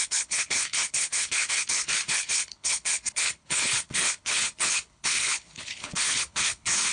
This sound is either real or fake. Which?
fake